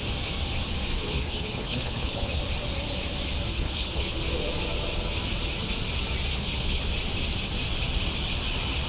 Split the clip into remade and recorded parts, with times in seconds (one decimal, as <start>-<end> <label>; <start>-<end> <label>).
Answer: 0.0-0.9 recorded; 0.9-2.4 remade; 2.4-3.5 recorded; 3.5-4.2 remade; 4.2-6.3 recorded; 6.3-6.8 remade; 6.8-8.9 recorded